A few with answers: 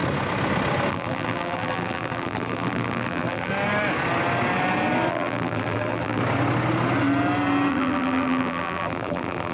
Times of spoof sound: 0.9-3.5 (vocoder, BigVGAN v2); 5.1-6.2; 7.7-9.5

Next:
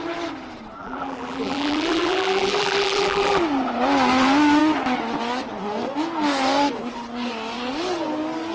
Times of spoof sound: 0.8-3.4 (vocoder, BigVGAN v2)

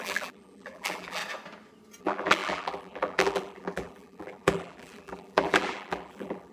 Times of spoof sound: 0.0-1.2 (vocoder, BigVGAN v2); 2.0-6.5

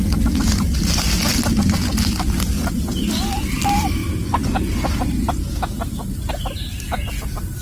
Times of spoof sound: none

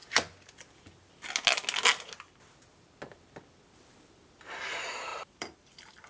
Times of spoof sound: 5.1-6.1 (vocoder, BigVGAN v2)

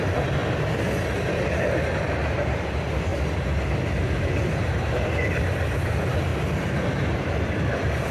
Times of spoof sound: 0.0-0.4 (vocoder, BigVGAN v2); 1.3-3.1; 4.2-6.3; 6.9-8.1

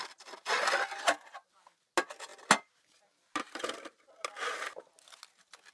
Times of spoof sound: none

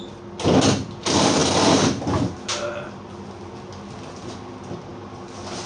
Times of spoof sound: none